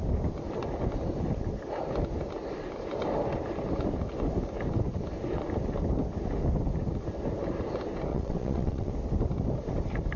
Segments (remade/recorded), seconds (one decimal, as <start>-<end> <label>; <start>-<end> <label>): 0.0-8.1 recorded; 8.1-8.9 remade; 8.9-10.2 recorded